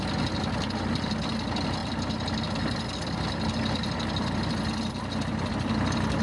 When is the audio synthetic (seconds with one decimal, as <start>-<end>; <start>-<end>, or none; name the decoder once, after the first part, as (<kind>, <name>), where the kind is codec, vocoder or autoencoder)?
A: none